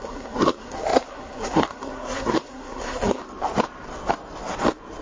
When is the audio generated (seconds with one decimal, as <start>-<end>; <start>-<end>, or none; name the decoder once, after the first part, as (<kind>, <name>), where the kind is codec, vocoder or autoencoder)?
0.0-3.2 (codec, SNAC)